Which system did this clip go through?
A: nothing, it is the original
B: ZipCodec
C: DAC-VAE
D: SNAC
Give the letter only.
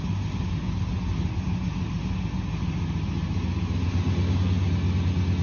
A